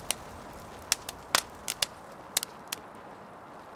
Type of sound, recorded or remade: recorded